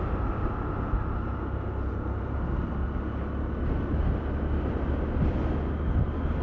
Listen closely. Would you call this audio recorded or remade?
recorded